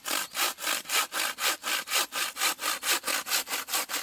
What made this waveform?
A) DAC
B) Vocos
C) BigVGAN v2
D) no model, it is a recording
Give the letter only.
D